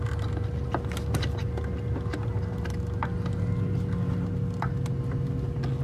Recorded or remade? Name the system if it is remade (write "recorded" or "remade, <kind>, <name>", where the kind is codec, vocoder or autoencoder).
recorded